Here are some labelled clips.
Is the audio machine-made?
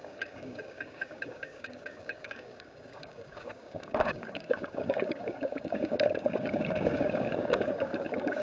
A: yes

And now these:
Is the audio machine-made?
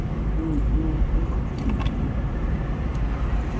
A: no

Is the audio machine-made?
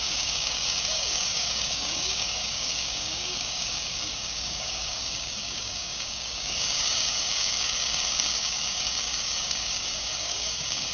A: yes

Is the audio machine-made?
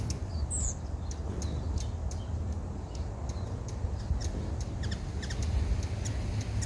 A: no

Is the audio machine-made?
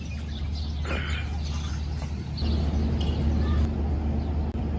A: no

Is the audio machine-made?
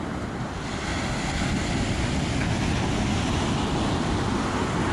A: no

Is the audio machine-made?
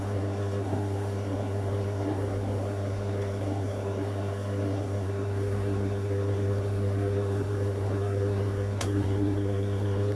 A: yes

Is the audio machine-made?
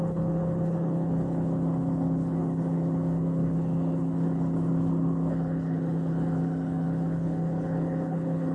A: yes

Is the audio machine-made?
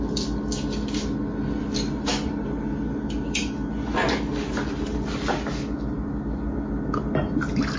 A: no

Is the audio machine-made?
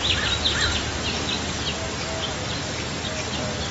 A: no